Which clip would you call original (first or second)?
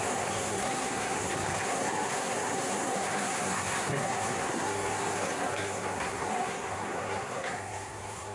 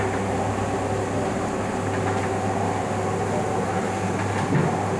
second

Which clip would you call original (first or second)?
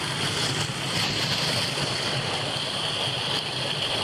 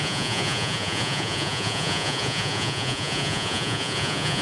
first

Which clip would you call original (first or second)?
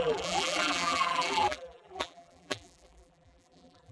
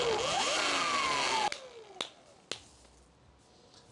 second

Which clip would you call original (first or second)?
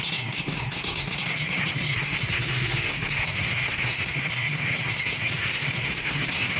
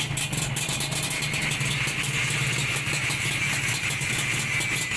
second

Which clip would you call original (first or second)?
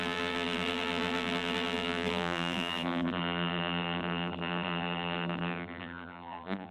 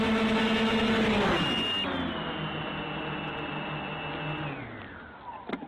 second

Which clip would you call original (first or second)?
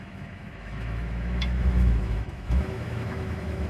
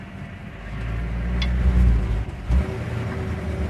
second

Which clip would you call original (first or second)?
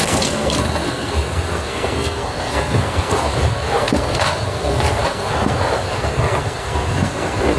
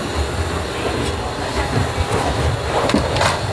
second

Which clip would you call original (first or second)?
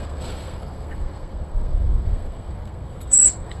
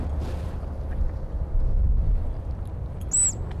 second